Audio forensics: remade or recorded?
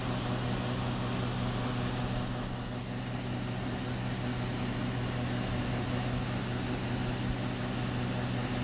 recorded